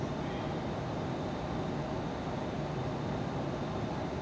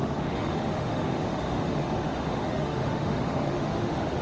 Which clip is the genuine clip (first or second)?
first